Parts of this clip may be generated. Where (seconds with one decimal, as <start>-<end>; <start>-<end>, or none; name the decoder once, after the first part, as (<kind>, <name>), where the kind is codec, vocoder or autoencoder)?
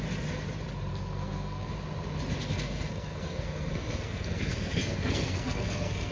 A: 0.9-1.7 (codec, SNAC); 2.4-6.1